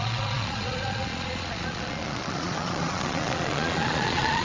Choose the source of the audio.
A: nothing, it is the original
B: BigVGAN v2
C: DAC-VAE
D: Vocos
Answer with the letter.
D